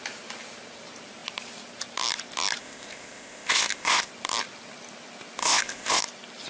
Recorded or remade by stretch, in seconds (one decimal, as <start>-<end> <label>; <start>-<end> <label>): 0.0-2.6 recorded; 2.6-4.1 remade; 4.1-5.4 recorded; 5.4-6.0 remade; 6.0-6.5 recorded

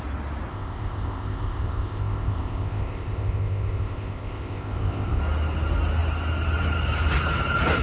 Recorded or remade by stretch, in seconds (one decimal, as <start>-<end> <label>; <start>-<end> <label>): 0.0-0.5 recorded; 0.5-5.2 remade; 5.2-7.8 recorded

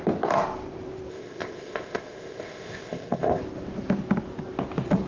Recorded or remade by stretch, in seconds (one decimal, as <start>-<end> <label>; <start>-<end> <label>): 0.0-1.1 recorded; 1.1-3.4 remade; 3.4-5.1 recorded

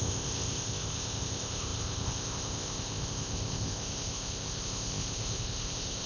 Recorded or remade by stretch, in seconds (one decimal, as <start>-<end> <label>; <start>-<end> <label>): 0.0-6.1 remade

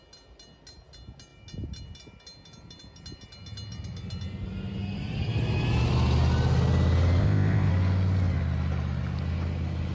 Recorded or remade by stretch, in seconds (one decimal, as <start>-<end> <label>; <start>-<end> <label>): 0.0-7.2 recorded; 7.2-7.7 remade; 7.7-9.9 recorded